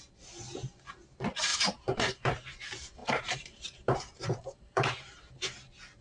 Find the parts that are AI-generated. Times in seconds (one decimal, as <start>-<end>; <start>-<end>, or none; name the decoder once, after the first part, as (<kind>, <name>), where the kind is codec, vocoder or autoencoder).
1.5-2.3 (vocoder, BigVGAN v2); 3.0-5.3